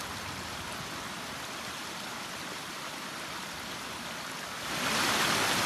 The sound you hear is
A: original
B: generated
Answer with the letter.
A